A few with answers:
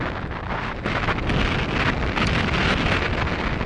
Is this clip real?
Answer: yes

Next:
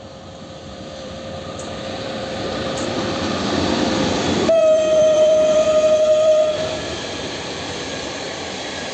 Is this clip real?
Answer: no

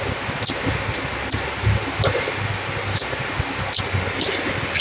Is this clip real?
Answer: yes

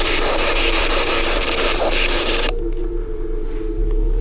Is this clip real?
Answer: no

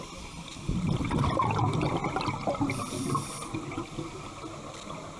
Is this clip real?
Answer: yes